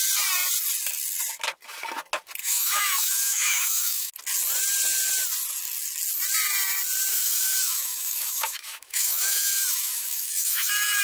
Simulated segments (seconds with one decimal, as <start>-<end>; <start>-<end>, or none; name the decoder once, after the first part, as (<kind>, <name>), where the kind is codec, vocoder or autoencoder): 2.4-4.1 (autoencoder, DAC-VAE); 7.1-11.0